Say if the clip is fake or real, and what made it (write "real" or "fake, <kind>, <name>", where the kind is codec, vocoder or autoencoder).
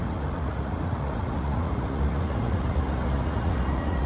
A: fake, vocoder, Vocos